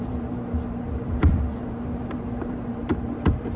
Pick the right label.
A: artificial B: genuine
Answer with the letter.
A